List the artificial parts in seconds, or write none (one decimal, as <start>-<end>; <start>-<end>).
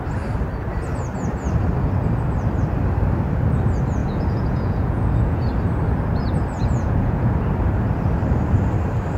4.0-5.5; 6.6-7.3